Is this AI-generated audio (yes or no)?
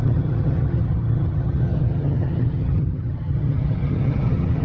yes